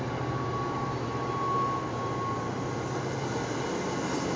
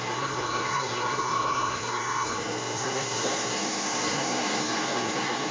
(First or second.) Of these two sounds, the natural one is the first